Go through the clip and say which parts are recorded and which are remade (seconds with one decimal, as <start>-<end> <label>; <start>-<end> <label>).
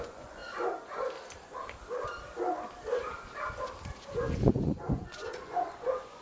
0.0-0.4 remade; 0.4-4.1 recorded; 4.1-6.2 remade